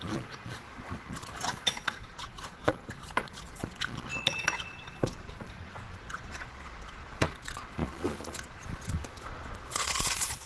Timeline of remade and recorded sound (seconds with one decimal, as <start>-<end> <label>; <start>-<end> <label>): 0.0-10.5 remade